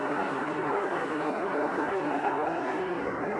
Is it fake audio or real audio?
fake